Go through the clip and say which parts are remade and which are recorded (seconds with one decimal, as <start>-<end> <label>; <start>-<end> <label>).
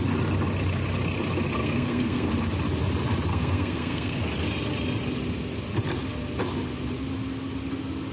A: 0.0-1.6 recorded; 1.6-2.3 remade; 2.3-3.3 recorded; 3.3-4.2 remade; 4.2-8.1 recorded